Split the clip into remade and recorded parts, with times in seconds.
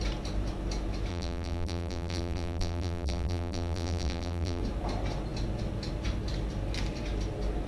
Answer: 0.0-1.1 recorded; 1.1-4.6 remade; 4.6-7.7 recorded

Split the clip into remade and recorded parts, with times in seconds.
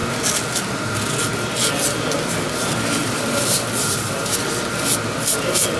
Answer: 0.0-3.0 recorded; 3.0-4.1 remade; 4.1-5.8 recorded